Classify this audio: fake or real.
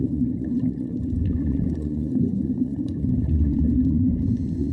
fake